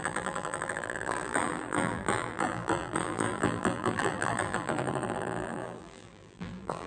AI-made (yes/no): yes